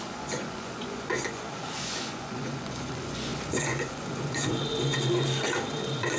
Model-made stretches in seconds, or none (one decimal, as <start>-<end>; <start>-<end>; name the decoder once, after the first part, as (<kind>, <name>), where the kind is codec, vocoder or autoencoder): 0.0-4.9 (vocoder, Vocos); 5.7-6.2